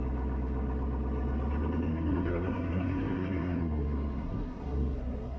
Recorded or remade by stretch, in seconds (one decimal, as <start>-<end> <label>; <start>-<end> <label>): 0.0-1.9 recorded; 1.9-5.4 remade

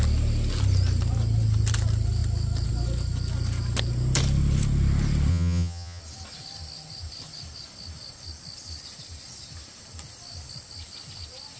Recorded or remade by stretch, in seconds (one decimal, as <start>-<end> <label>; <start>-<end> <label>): 0.0-5.3 recorded; 5.3-6.0 remade; 6.0-11.6 recorded

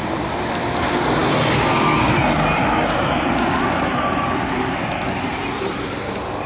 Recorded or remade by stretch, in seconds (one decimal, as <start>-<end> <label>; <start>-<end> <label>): 0.0-6.5 recorded

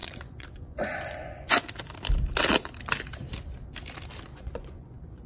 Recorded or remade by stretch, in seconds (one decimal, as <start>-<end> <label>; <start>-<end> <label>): 0.0-1.6 remade; 1.6-4.3 recorded; 4.3-5.3 remade

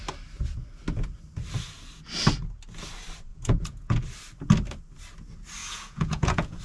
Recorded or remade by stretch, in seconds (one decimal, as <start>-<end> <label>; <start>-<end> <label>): 0.0-3.3 recorded; 3.3-4.0 remade; 4.0-5.6 recorded; 5.6-6.6 remade